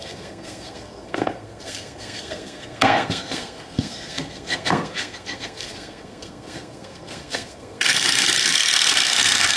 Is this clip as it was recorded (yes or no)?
no